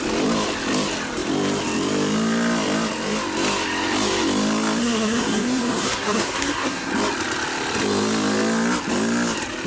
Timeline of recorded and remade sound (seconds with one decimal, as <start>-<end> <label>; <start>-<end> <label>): 0.0-4.8 recorded; 4.8-6.9 remade; 6.9-9.7 recorded